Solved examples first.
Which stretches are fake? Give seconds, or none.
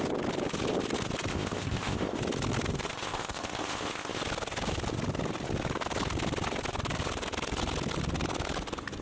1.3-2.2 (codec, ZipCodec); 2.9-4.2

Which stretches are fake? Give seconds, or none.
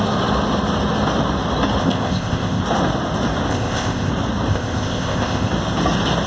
1.8-2.6 (codec, ZipCodec); 3.5-4.1; 4.5-5.5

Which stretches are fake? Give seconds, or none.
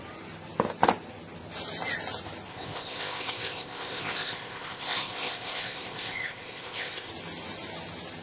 2.5-7.1 (codec, ZipCodec)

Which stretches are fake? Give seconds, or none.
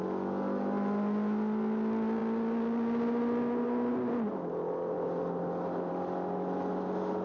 none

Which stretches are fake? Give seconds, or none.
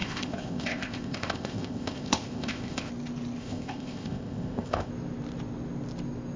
0.0-2.9 (codec, ZipCodec); 3.4-4.9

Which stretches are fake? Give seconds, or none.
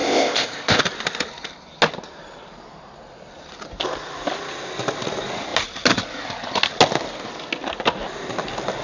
0.0-0.8 (codec, ZipCodec)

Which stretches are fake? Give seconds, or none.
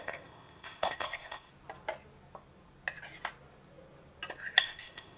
0.0-1.5 (codec, ZipCodec); 4.6-5.2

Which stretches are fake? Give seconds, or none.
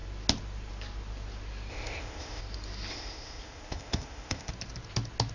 1.7-2.4 (codec, ZipCodec); 2.9-4.5